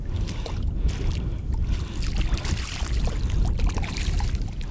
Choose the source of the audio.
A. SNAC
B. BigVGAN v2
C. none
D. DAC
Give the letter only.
C